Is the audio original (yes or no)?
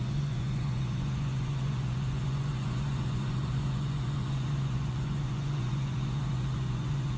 no